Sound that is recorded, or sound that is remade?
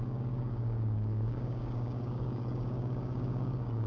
remade